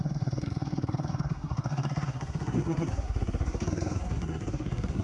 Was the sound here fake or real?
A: fake